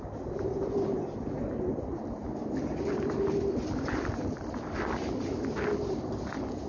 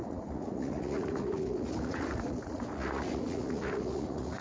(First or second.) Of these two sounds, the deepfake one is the second